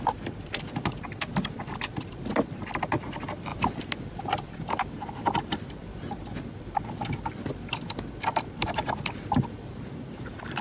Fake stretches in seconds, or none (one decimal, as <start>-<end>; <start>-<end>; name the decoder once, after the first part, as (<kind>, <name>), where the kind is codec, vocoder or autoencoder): none